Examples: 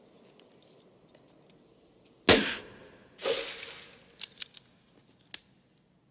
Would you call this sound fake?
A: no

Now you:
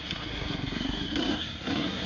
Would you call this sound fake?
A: yes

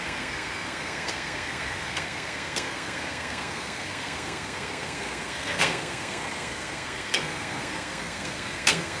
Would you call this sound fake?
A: yes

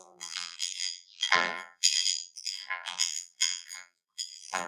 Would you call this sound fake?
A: yes